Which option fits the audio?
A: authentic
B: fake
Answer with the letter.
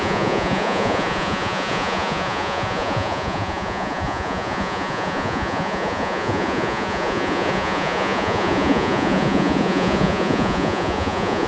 B